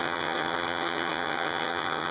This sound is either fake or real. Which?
fake